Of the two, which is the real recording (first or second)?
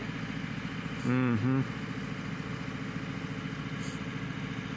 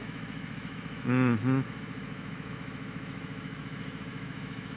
first